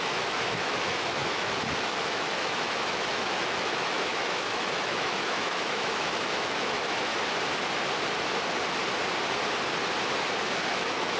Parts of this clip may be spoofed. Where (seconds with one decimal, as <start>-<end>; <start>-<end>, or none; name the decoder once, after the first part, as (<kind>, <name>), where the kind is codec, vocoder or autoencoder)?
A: 0.0-7.1 (autoencoder, DAC-VAE); 10.7-11.2